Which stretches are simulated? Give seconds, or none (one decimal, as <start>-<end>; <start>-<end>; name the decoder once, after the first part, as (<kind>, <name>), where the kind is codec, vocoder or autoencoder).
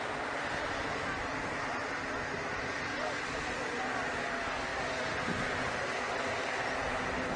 4.7-6.8 (vocoder, BigVGAN v2)